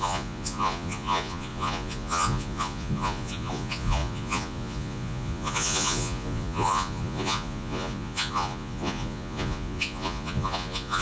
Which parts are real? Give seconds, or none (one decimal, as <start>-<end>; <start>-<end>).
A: none